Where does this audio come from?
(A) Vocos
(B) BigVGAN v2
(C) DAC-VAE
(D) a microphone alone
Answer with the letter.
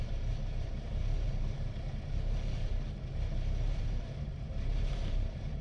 B